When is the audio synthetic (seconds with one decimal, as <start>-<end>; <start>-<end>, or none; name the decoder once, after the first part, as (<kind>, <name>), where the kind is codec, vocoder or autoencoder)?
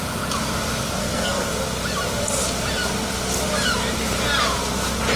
1.0-1.5 (codec, SNAC)